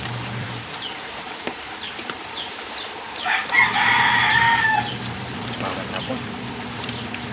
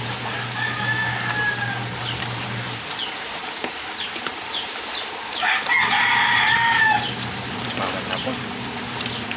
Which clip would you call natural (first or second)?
second